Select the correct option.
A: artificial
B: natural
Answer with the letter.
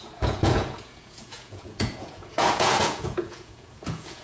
A